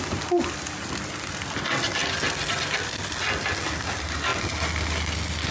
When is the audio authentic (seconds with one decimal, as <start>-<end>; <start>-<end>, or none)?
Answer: 0.0-5.5